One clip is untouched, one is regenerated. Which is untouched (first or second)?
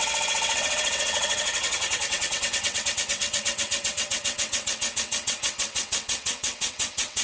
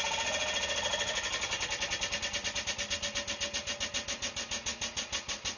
second